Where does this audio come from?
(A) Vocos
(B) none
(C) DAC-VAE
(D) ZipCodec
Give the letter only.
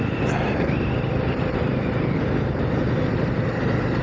B